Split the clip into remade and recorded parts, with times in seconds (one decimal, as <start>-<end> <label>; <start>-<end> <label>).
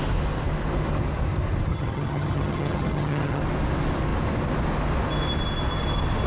0.0-1.7 recorded; 1.7-3.4 remade; 3.4-6.3 recorded